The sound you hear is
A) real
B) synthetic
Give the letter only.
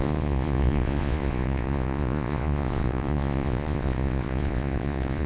B